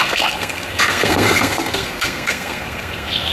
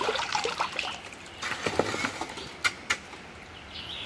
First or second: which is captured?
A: second